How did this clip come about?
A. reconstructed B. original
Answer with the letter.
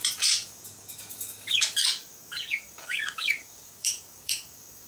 A